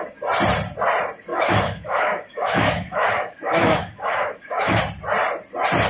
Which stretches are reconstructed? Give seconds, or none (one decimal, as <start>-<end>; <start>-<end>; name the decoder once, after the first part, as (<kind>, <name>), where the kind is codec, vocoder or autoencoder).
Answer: 1.3-4.8 (autoencoder, DAC-VAE)